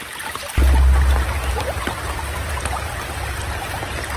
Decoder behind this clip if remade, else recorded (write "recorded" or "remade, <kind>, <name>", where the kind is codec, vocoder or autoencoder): recorded